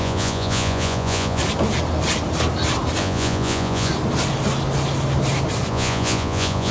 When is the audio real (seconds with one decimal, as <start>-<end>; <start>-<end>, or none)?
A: 1.4-3.0; 3.9-5.7